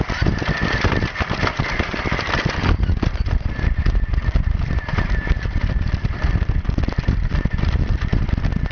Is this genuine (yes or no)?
no